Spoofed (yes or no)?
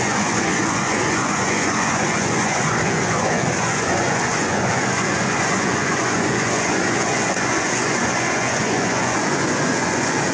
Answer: yes